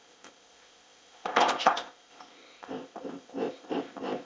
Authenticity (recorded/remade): remade